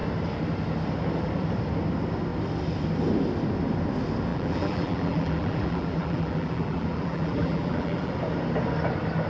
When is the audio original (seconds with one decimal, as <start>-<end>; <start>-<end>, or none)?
0.0-4.3; 8.1-9.3